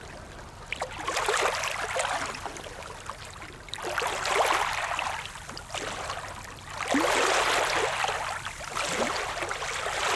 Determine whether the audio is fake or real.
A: real